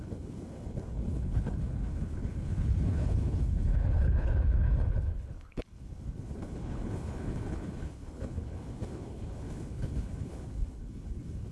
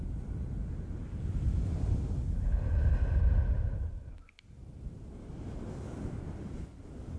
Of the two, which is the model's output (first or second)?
first